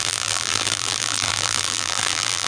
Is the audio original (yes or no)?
no